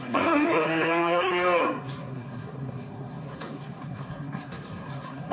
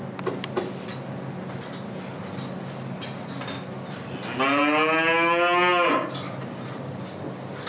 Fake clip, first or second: first